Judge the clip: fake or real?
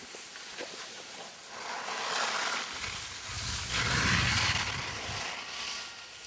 real